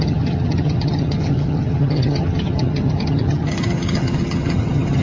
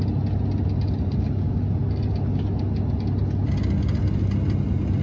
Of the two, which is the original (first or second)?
second